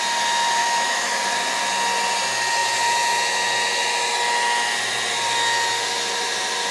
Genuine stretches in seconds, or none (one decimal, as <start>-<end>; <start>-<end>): 0.0-0.6; 1.2-6.7